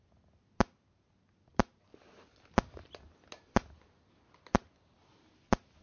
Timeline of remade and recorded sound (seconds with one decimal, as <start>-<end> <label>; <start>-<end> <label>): 0.0-5.8 recorded